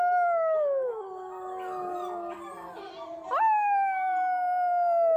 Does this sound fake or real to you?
real